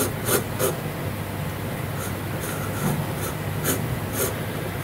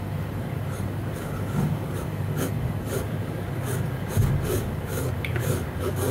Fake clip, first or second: second